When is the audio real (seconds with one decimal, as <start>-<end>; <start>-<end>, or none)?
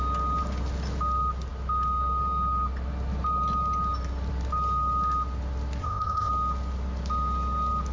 0.0-5.8; 6.3-7.9